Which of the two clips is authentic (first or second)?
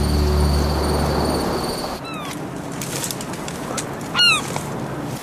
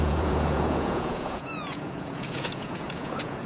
first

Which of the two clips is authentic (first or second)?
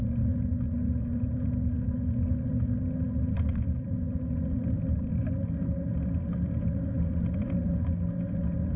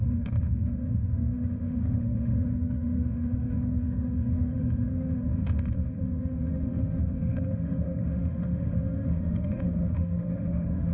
first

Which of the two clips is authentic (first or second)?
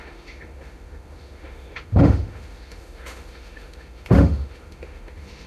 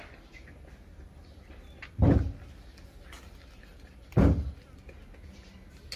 second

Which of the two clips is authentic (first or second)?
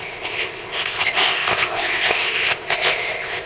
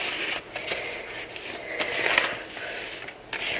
second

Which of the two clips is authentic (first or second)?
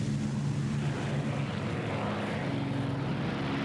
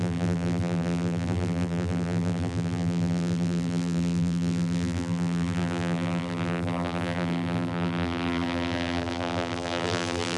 first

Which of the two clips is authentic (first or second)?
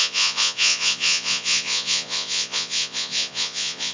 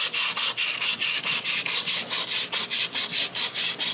second